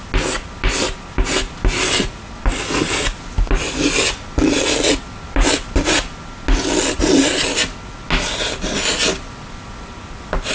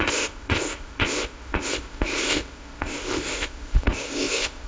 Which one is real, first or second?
first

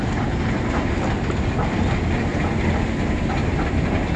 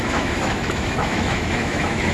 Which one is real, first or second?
first